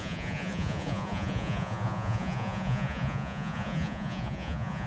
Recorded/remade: remade